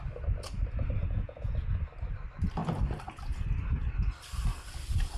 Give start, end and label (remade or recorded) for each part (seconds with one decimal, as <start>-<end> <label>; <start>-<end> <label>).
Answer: 0.0-1.0 recorded; 1.0-1.7 remade; 1.7-5.2 recorded